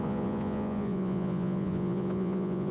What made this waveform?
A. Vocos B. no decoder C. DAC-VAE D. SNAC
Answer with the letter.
A